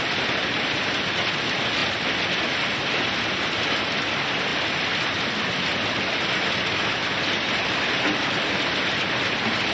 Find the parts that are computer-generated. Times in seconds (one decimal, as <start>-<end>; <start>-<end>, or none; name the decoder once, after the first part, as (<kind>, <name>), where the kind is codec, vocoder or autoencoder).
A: none